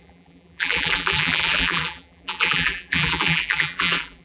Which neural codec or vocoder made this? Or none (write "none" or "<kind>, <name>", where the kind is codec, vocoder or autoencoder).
vocoder, BigVGAN v2